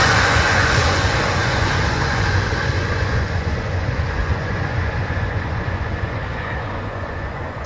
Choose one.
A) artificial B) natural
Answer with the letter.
A